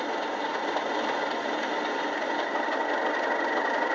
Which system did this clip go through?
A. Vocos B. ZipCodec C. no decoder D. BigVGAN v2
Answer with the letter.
C